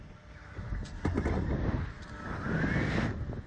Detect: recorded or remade recorded